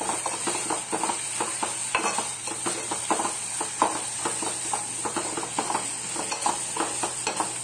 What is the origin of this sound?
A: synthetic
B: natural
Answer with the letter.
B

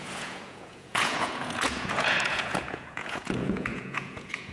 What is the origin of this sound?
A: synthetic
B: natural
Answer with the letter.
A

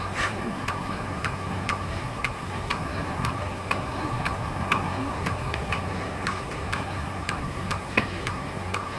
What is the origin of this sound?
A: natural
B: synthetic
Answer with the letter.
B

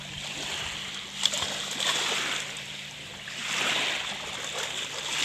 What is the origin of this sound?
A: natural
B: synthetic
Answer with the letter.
A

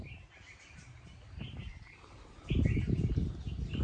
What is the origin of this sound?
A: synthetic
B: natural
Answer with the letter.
A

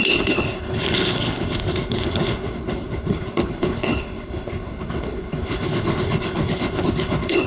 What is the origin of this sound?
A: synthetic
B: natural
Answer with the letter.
A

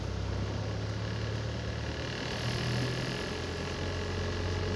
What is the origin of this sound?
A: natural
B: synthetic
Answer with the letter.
A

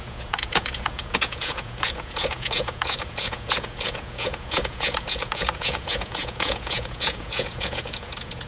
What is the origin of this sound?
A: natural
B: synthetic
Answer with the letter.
B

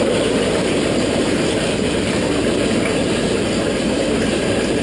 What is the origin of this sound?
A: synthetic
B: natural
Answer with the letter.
A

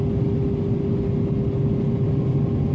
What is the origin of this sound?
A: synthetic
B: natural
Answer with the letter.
B